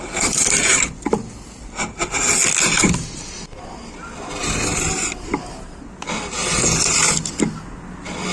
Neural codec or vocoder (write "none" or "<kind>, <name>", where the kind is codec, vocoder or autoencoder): none